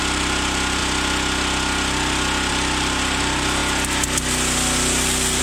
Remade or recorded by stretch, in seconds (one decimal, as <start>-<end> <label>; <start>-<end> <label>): 0.0-0.8 remade; 0.8-2.5 recorded; 2.5-3.6 remade; 3.6-5.4 recorded